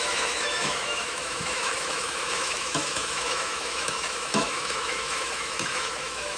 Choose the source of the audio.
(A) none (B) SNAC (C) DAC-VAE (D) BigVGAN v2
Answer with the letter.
C